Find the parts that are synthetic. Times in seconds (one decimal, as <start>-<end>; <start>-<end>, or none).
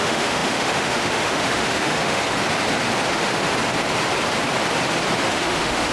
0.0-2.2; 3.1-3.5; 5.3-5.9